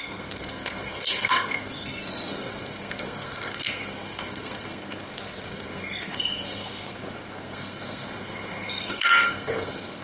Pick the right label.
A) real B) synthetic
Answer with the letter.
B